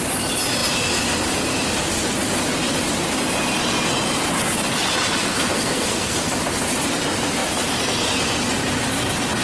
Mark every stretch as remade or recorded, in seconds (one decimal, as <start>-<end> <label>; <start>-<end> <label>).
0.0-5.2 recorded; 5.2-6.3 remade; 6.3-9.4 recorded